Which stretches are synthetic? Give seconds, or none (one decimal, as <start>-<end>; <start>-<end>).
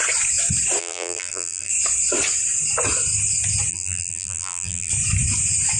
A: 0.8-1.7; 3.7-4.9